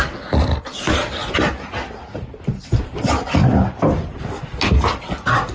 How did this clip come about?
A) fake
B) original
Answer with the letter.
B